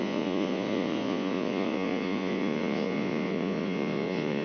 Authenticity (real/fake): fake